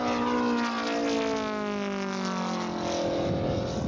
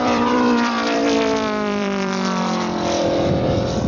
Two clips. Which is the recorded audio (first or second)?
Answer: first